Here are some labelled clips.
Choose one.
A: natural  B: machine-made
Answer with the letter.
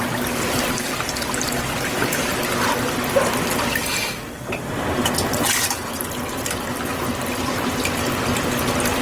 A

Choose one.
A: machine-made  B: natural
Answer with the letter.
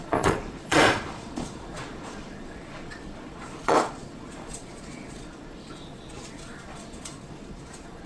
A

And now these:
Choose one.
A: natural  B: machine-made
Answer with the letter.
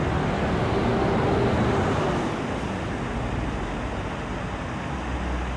A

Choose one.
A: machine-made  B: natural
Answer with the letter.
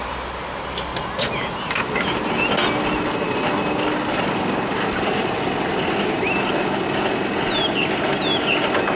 B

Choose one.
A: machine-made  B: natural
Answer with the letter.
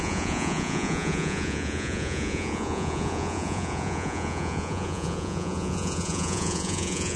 A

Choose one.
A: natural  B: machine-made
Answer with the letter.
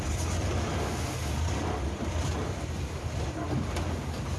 A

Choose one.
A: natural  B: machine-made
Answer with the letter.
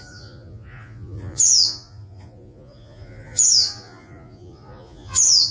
B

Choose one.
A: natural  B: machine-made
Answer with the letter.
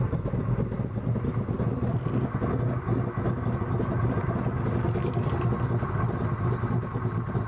A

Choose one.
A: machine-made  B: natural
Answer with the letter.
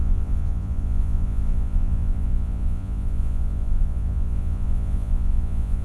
A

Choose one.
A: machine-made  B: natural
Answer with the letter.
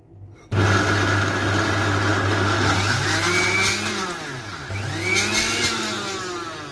B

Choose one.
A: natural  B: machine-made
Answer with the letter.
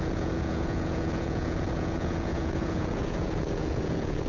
B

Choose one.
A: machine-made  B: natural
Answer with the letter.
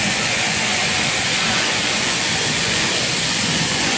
A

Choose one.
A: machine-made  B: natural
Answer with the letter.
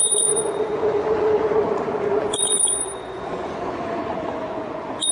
A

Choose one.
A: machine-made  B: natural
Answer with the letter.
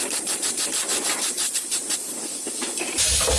B